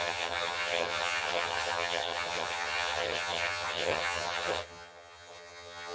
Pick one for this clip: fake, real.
fake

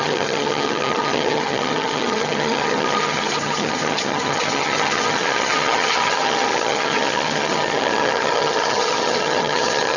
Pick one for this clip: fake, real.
fake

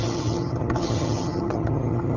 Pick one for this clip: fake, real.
fake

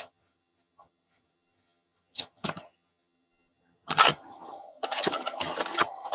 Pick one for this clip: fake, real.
fake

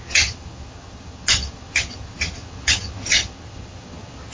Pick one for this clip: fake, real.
fake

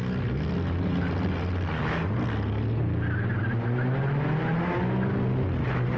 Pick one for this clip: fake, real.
real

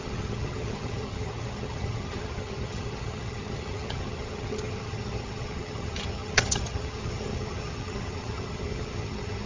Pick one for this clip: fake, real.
fake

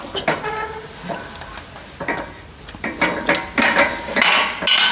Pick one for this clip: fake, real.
real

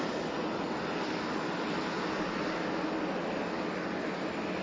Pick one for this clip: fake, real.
real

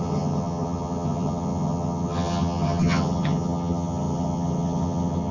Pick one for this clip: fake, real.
fake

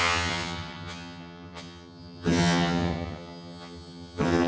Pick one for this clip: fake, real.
fake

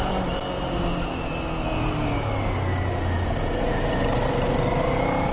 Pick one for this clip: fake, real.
real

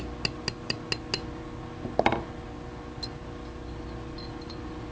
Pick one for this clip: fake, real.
real